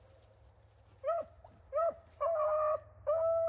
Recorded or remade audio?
recorded